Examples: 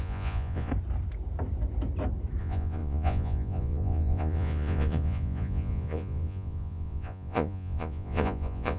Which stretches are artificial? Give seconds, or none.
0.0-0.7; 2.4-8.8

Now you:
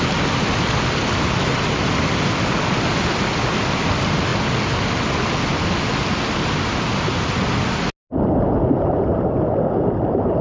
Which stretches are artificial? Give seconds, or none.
none